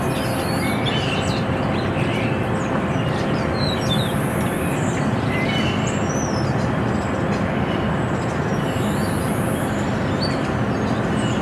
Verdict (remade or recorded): recorded